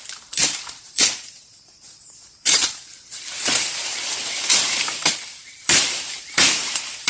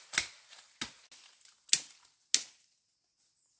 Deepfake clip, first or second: first